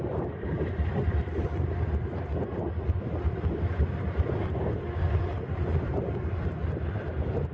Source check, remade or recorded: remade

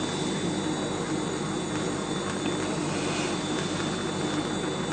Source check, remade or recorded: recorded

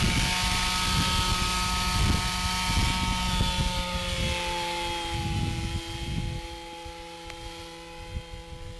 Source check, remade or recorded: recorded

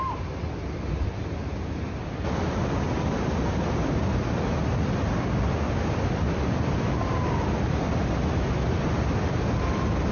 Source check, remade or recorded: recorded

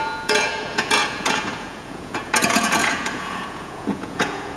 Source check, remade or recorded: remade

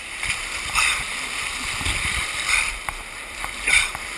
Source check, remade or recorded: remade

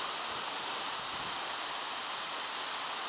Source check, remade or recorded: recorded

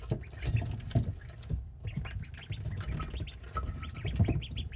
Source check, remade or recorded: recorded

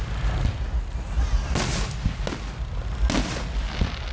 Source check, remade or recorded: recorded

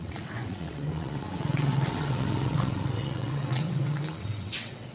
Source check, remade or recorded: remade